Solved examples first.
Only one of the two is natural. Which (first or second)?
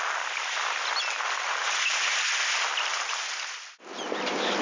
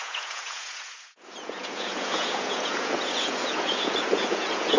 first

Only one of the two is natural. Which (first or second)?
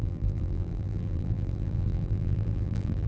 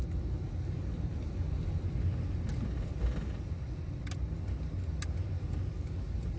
second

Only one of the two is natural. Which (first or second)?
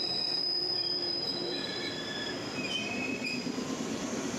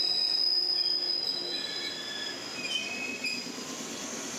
second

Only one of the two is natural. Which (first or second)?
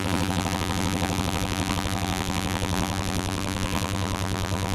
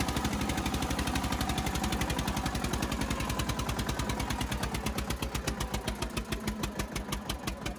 second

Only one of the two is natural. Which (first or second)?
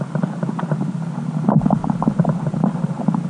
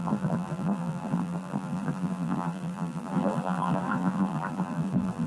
first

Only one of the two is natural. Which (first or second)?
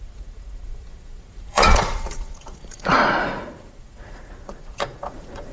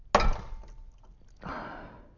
second